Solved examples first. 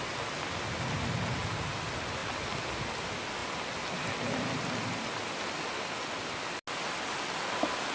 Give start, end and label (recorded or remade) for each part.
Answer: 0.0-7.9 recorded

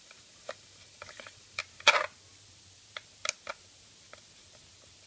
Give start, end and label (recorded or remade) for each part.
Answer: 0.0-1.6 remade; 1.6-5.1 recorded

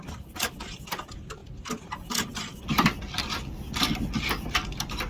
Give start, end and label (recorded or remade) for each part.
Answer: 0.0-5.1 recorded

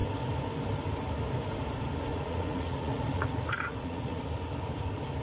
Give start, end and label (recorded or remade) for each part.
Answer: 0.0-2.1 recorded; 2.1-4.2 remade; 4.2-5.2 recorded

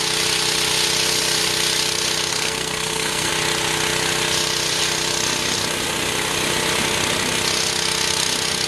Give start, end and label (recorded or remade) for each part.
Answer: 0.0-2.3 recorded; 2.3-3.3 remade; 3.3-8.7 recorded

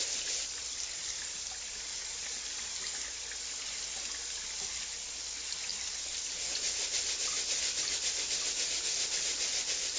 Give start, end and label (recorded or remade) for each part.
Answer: 0.0-0.6 recorded; 0.6-1.7 remade; 1.7-5.7 recorded; 5.7-6.4 remade; 6.4-10.0 recorded

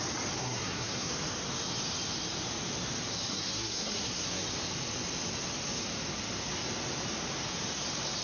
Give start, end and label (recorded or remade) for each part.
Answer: 0.0-0.4 recorded; 0.4-1.1 remade; 1.1-3.3 recorded; 3.3-4.4 remade; 4.4-8.2 recorded

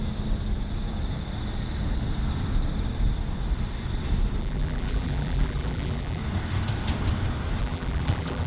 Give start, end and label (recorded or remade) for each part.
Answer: 0.0-4.4 recorded; 4.4-6.2 remade; 6.2-7.6 recorded; 7.6-8.5 remade